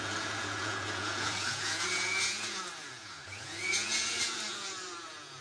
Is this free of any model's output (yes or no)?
no